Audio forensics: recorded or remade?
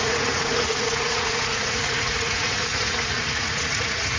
remade